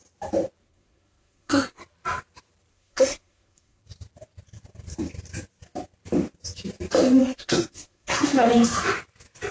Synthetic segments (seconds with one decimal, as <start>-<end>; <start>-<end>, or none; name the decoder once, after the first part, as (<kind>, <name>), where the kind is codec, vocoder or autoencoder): 0.6-1.8 (codec, SNAC); 2.7-3.8; 7.2-8.5

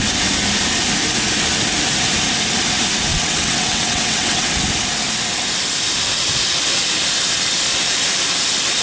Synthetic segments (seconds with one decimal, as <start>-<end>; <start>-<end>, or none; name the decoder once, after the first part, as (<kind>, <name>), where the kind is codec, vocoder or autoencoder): 3.1-4.6 (vocoder, WaveNeXt)

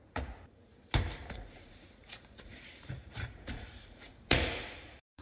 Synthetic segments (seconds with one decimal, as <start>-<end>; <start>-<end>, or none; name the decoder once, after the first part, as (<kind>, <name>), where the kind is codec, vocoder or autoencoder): 0.0-0.7 (vocoder, Vocos); 1.3-5.2

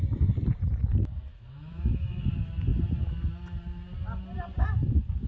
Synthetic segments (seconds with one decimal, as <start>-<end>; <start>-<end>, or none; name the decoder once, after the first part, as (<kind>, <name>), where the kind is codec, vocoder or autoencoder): 1.3-2.2 (autoencoder, DAC-VAE)

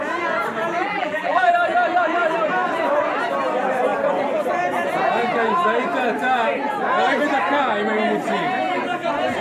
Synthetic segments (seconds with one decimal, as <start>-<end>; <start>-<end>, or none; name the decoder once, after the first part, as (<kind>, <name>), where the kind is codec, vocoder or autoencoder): 0.8-1.5 (vocoder, BigVGAN v2)